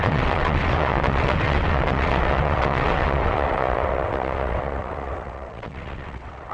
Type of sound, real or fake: fake